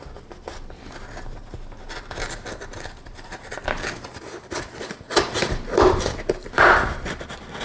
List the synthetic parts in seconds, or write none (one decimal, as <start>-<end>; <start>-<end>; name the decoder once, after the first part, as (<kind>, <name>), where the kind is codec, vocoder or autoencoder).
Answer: 6.4-7.6 (vocoder, BigVGAN v2)